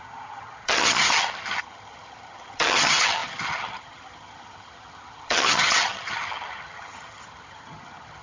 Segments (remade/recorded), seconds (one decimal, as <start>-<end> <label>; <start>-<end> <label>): 0.0-8.2 remade